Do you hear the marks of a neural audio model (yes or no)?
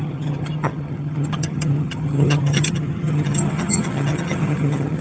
yes